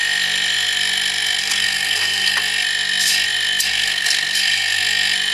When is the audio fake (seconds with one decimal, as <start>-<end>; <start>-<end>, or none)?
1.4-2.3; 3.7-4.8